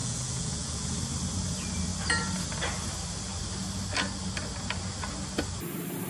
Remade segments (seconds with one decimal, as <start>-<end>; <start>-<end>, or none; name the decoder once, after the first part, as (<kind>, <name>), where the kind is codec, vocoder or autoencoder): 0.0-0.9 (vocoder, Vocos)